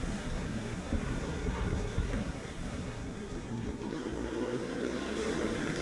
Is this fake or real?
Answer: fake